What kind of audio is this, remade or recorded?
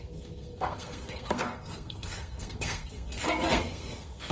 remade